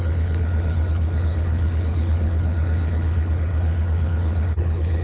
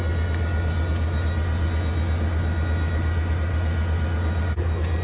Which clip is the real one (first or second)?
second